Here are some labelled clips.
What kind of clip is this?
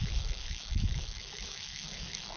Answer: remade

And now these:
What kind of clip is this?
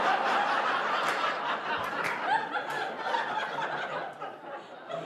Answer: recorded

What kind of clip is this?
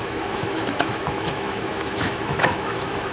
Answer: remade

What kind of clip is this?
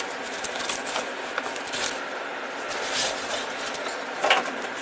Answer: recorded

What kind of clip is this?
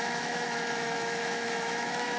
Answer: remade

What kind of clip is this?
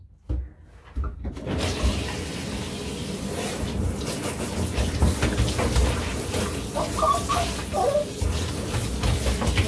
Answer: recorded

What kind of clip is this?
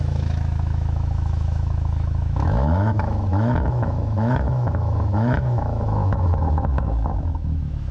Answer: remade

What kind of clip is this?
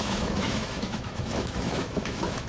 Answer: remade